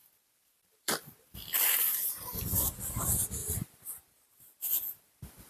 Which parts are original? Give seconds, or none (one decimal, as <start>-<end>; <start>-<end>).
none